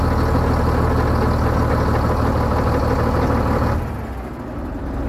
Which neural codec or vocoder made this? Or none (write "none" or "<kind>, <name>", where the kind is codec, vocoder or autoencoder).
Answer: none